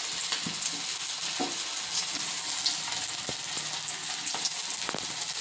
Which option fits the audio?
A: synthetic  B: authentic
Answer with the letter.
B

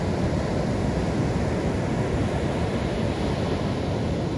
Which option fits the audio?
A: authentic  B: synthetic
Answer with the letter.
A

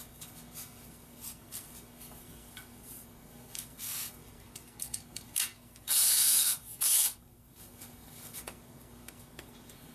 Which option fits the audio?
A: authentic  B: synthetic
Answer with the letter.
B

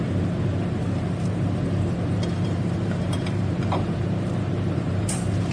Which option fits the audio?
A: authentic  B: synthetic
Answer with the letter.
B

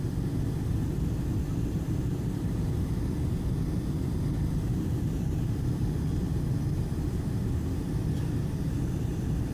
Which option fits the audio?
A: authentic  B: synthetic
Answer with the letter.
A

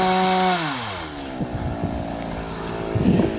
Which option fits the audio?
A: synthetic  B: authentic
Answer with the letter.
B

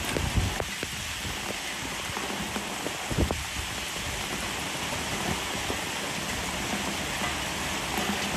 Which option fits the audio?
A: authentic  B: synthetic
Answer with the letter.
A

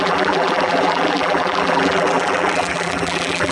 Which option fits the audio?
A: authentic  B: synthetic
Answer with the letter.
B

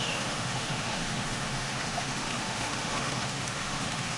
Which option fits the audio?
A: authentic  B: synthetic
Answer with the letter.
B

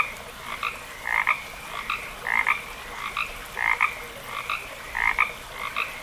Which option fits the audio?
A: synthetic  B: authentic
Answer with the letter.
B